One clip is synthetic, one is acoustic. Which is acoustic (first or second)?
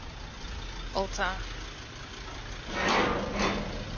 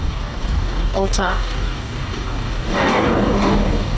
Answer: first